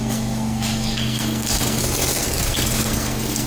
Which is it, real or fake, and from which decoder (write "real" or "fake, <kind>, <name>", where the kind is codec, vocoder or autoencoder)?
fake, codec, SNAC